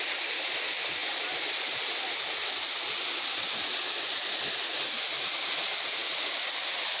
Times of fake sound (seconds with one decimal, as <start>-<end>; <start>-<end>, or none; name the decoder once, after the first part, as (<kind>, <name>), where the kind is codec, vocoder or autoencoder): none